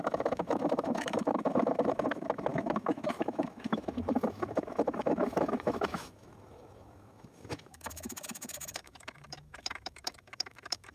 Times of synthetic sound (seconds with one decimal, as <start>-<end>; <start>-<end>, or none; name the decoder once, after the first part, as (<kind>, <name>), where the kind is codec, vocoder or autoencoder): 0.0-10.9 (autoencoder, DAC-VAE)